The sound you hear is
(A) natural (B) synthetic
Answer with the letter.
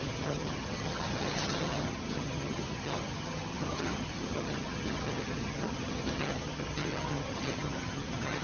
B